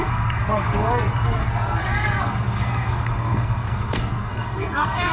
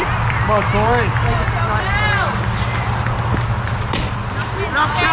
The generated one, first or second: first